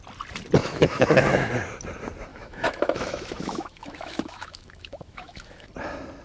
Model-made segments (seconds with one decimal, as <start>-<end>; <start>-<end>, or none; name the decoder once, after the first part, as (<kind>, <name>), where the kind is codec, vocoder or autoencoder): 0.6-1.5 (autoencoder, DAC-VAE); 2.3-5.7